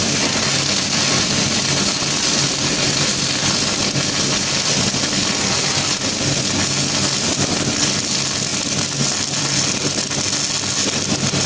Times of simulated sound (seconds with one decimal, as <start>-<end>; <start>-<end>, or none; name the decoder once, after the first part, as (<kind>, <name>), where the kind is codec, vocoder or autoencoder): none